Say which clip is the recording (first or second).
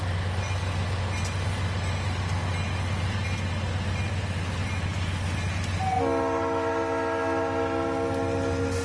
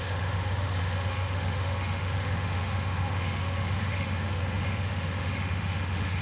first